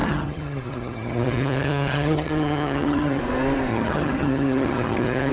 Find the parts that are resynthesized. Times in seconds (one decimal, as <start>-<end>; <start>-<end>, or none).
0.0-3.2; 3.7-5.3